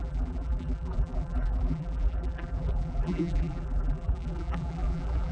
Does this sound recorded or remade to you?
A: remade